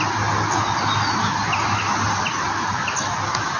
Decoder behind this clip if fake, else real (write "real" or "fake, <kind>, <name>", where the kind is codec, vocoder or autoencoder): real